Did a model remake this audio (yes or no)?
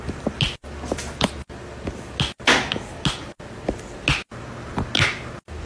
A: no